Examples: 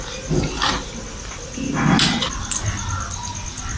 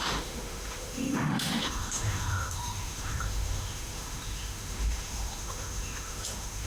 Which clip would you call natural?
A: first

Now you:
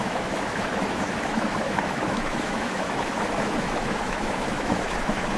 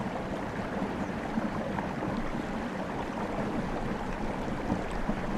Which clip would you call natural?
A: second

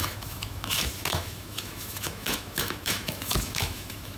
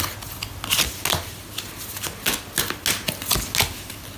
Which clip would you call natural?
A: second